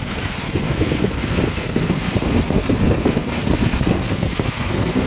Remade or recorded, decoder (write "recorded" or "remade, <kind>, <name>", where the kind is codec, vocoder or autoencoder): remade, codec, SNAC